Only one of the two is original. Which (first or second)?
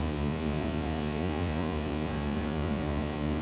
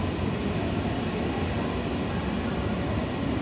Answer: second